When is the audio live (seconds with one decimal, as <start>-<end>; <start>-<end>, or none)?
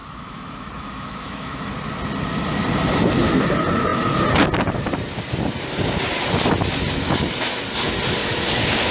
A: 1.7-8.9